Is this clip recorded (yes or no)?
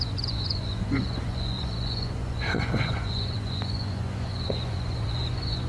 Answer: no